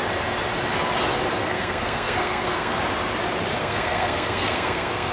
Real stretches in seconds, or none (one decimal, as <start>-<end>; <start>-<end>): 0.0-1.4; 2.8-3.6